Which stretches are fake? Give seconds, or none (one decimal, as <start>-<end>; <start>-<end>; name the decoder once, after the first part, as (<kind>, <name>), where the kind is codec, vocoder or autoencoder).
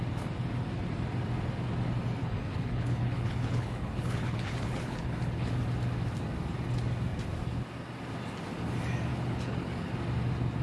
2.2-5.5 (codec, HILCodec); 9.1-9.9